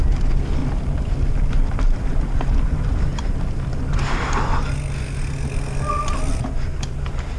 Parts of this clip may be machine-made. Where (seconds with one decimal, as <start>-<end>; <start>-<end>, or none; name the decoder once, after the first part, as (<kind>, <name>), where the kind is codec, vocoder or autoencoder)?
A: 0.6-3.7 (vocoder, BigVGAN v2)